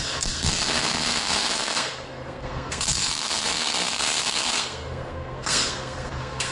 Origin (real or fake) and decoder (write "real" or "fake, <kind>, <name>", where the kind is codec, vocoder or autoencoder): fake, codec, SNAC